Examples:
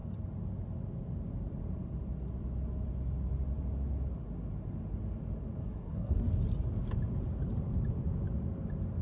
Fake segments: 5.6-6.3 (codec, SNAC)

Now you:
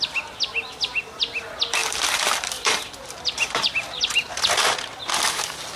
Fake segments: 1.8-3.7 (vocoder, BigVGAN v2)